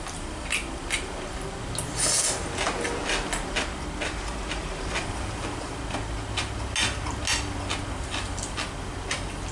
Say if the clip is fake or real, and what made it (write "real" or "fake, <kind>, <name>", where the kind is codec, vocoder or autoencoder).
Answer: real